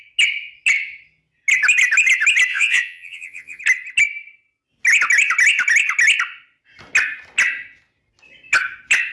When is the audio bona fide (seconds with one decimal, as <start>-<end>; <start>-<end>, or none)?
0.0-2.5; 3.6-9.1